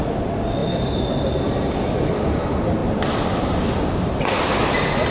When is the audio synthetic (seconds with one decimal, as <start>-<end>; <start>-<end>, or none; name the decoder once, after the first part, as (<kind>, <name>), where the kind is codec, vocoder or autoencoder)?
none